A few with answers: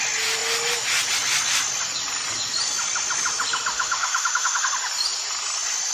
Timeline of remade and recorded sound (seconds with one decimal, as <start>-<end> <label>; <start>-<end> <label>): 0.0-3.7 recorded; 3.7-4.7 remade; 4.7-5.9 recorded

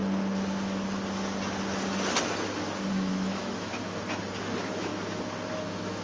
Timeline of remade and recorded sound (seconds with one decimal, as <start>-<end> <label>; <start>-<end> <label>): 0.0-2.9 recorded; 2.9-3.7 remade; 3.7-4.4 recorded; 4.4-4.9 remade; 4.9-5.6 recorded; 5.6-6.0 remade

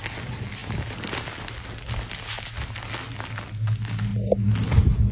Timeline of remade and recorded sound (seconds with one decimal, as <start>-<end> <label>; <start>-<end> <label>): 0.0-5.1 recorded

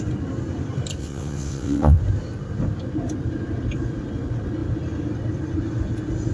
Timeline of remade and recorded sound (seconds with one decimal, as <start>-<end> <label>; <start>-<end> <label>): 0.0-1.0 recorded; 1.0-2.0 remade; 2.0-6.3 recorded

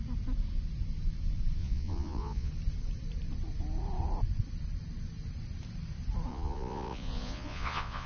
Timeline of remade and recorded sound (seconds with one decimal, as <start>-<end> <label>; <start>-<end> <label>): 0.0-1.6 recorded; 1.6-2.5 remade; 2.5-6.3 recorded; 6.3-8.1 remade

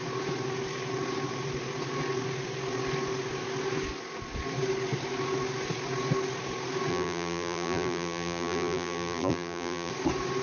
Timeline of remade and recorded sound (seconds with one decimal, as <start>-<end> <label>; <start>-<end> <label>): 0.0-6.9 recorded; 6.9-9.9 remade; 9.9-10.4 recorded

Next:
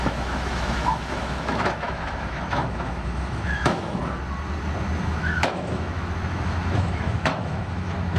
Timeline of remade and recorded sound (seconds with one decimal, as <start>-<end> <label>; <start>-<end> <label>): 0.0-4.0 remade; 4.0-5.0 recorded; 5.0-8.2 remade